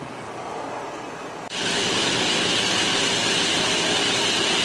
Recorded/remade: recorded